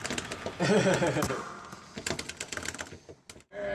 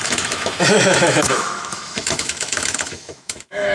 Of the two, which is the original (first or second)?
first